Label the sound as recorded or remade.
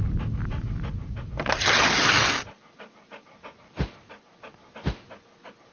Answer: recorded